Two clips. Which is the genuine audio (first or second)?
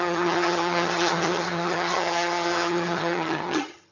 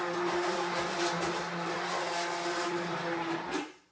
second